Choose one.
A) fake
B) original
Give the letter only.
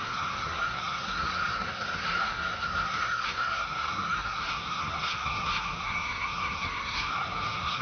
A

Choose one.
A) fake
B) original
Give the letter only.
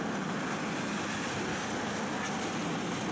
B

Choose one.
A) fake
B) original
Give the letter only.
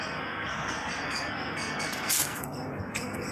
A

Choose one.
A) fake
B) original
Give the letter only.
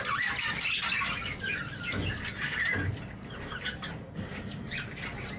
B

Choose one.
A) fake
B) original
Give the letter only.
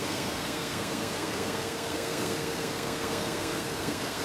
A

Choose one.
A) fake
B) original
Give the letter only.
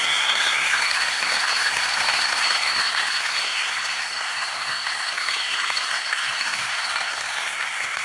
A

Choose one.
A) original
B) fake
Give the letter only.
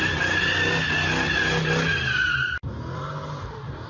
A